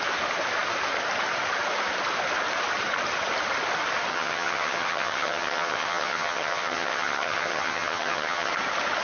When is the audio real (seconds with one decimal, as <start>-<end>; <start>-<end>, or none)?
0.0-4.1; 8.5-9.0